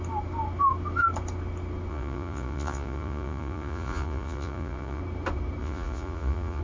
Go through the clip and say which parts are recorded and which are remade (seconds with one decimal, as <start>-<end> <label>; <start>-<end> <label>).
0.0-1.9 recorded; 1.9-5.0 remade; 5.0-5.6 recorded; 5.6-6.6 remade